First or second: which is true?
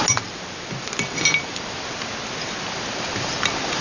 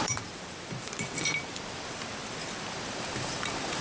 first